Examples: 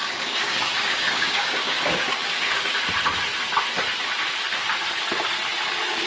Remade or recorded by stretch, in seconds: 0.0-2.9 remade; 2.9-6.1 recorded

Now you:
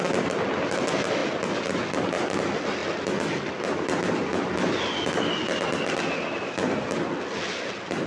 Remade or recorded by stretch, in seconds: 0.0-8.1 recorded

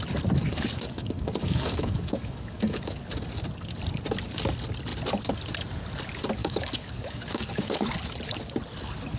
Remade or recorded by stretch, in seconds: 0.0-0.4 recorded; 0.4-3.0 remade; 3.0-6.4 recorded; 6.4-7.9 remade; 7.9-9.2 recorded